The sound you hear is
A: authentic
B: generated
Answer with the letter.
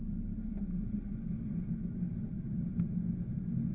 A